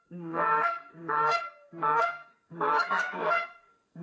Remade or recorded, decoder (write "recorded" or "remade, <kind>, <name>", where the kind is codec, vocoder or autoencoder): remade, codec, SNAC